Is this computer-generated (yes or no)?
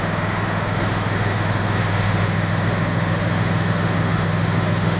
yes